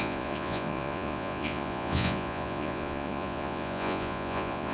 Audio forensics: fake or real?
fake